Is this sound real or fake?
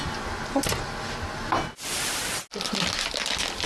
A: real